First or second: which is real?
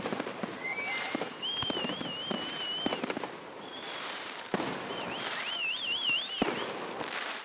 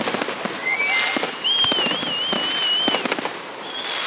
second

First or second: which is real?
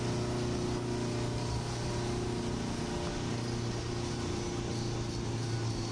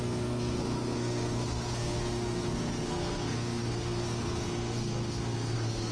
first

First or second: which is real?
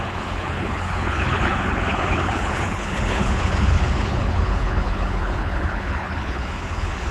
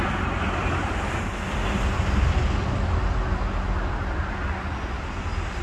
second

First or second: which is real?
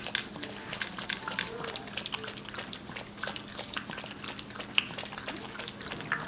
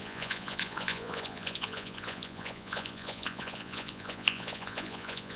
first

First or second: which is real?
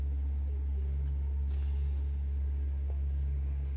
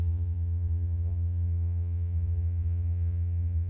first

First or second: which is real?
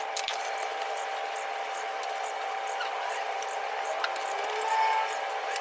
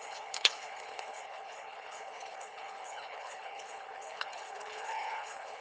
first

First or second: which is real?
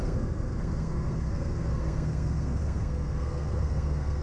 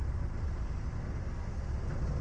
second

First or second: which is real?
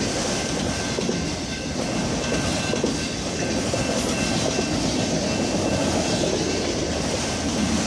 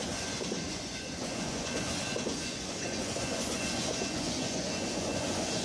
first